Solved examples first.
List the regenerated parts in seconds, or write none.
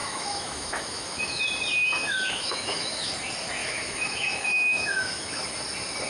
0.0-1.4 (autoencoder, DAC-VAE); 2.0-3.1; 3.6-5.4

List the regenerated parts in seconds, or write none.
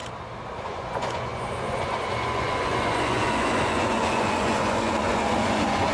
0.6-5.9 (vocoder, Vocos)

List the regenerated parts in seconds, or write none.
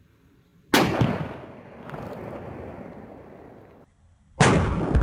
none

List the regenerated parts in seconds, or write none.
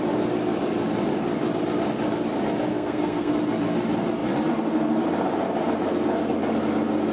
2.7-3.3 (codec, SNAC)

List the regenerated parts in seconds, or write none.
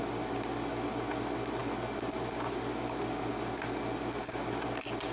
none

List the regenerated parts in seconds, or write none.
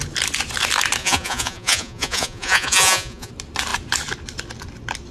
1.0-3.3 (vocoder, Vocos)